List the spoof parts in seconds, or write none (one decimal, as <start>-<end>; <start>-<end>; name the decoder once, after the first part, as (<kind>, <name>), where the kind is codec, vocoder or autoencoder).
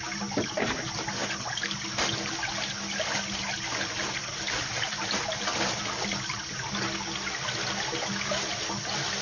8.5-9.2 (vocoder, BigVGAN v2)